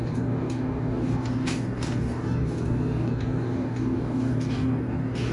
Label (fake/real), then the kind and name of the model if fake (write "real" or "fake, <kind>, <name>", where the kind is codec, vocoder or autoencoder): fake, codec, DAC